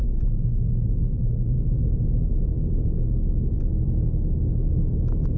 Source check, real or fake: real